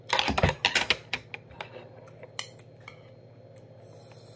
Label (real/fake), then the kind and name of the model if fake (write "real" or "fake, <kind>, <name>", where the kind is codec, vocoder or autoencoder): real